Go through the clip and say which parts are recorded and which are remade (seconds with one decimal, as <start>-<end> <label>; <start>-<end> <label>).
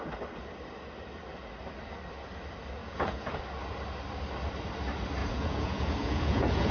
0.0-2.8 recorded; 2.8-3.4 remade; 3.4-5.2 recorded; 5.2-6.7 remade